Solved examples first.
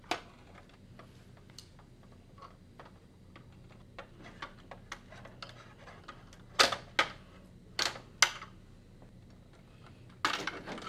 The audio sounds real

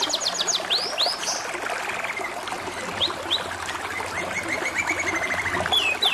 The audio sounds real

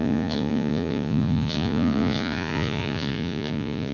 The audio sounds fake